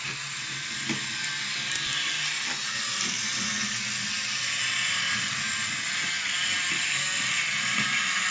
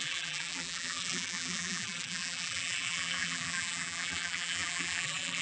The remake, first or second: second